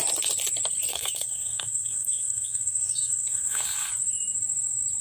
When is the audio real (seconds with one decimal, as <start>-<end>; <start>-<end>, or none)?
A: 0.0-0.9; 3.9-5.0